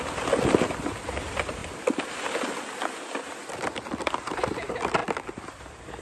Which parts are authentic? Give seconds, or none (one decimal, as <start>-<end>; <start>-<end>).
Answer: 0.0-6.0